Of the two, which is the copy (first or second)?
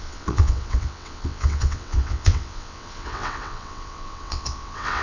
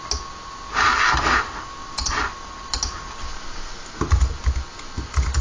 first